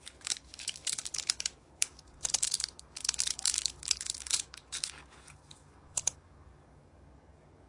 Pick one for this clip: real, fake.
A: fake